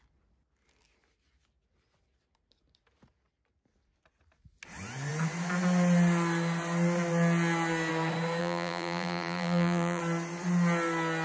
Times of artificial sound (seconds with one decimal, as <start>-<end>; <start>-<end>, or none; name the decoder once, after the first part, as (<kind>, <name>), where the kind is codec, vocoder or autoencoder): 8.4-10.0 (vocoder, BigVGAN v2)